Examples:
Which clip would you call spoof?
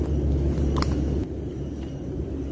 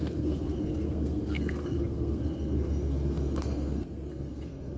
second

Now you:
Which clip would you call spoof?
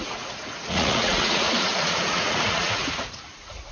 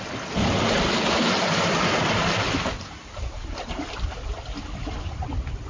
first